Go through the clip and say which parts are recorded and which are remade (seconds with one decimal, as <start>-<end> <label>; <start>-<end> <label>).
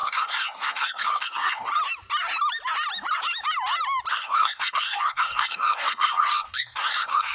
0.0-1.7 remade; 1.7-4.1 recorded; 4.1-7.3 remade